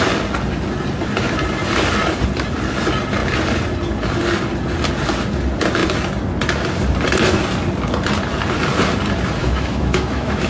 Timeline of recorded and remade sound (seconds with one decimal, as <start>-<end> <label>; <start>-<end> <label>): 0.0-9.4 recorded; 9.4-10.5 remade